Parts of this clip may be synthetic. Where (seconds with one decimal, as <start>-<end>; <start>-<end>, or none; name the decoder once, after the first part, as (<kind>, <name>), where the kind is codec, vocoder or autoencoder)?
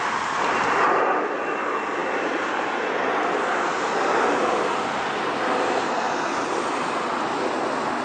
none